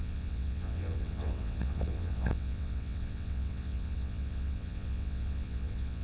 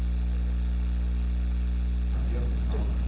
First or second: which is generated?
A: first